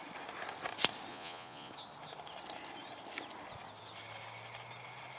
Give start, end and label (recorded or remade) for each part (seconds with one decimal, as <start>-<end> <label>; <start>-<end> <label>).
0.0-1.1 recorded; 1.1-1.7 remade; 1.7-5.2 recorded